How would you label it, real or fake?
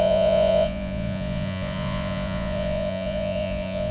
fake